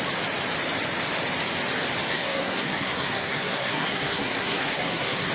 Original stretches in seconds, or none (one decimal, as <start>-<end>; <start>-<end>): 0.0-2.1